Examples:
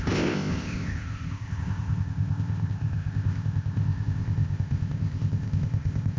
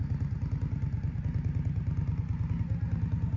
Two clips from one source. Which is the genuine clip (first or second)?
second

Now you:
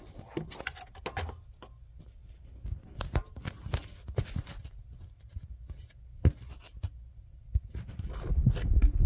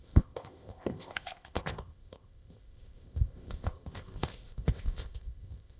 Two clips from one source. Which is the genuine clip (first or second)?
first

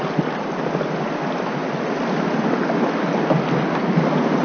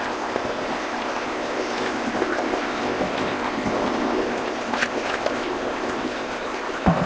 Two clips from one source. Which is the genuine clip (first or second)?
first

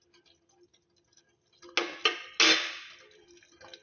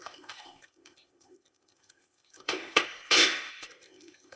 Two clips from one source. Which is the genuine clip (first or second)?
first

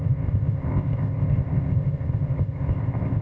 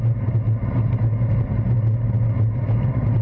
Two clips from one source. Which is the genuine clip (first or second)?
second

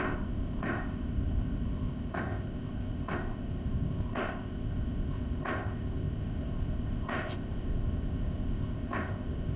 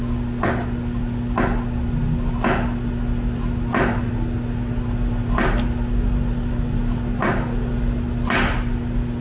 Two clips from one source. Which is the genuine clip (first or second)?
second